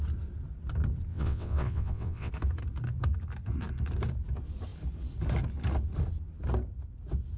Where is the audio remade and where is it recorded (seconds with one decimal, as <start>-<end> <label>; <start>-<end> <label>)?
0.0-1.1 recorded; 1.1-2.3 remade; 2.3-7.4 recorded